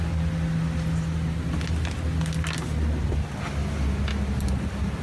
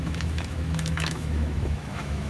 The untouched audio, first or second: first